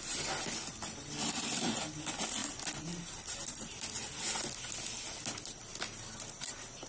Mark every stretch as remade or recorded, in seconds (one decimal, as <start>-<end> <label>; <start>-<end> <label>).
0.0-6.9 recorded